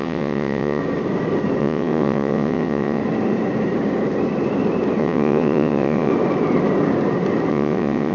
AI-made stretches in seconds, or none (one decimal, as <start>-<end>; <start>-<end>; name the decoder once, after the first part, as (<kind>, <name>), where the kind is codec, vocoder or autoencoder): 0.0-0.8 (vocoder, WaveNeXt); 1.6-3.0; 5.0-6.1; 7.5-8.1